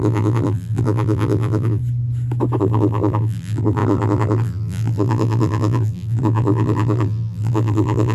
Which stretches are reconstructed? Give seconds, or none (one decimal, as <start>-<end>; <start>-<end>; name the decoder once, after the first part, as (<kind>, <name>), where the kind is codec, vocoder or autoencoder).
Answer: 0.0-1.8 (vocoder, BigVGAN v2); 2.6-8.1